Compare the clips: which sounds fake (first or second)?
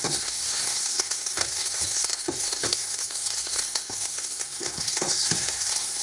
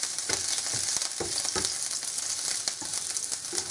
first